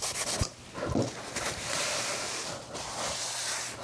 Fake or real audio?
real